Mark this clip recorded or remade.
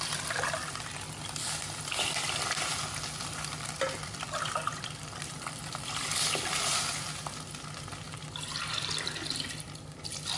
recorded